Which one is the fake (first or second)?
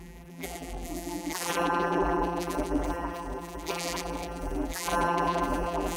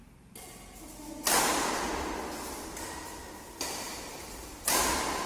first